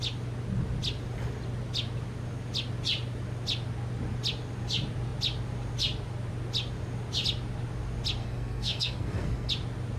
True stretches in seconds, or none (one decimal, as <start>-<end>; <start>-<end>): 0.0-8.2; 9.5-10.0